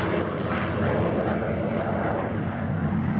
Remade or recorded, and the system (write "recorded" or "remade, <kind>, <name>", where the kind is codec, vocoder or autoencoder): recorded